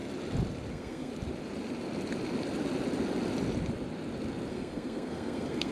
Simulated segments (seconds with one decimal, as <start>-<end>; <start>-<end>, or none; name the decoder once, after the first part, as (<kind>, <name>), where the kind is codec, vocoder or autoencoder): 0.7-1.1 (codec, SNAC); 4.5-5.7